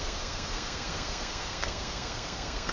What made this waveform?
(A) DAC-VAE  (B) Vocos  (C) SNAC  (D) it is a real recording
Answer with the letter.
C